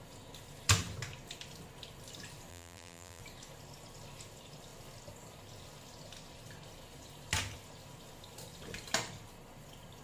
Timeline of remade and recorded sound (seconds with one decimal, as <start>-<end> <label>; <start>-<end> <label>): 0.0-2.5 recorded; 2.5-3.2 remade; 3.2-10.0 recorded